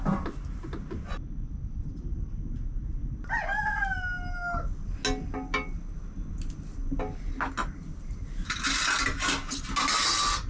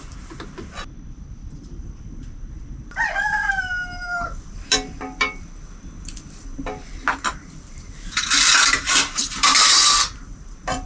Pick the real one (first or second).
first